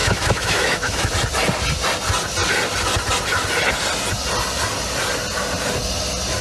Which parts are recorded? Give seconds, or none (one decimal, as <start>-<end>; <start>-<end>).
1.1-6.4